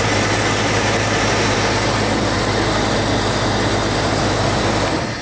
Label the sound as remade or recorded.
recorded